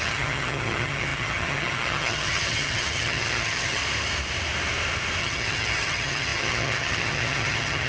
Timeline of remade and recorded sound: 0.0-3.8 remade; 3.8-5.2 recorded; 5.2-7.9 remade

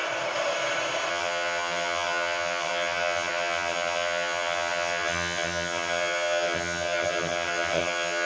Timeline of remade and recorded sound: 0.0-1.1 recorded; 1.1-8.3 remade